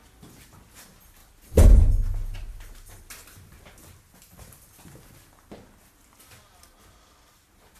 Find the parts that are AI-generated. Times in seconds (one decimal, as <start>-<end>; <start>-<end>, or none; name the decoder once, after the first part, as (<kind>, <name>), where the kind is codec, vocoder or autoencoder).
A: none